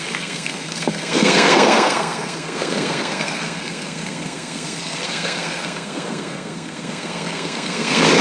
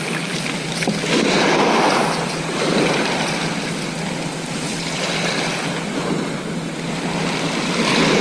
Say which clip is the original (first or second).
second